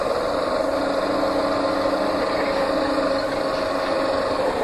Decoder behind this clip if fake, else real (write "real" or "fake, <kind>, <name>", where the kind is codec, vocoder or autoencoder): real